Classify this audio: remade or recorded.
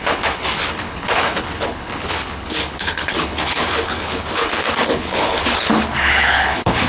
remade